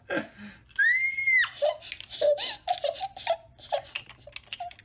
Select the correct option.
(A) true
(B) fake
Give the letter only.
A